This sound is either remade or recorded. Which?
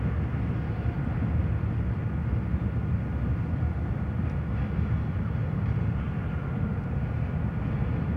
recorded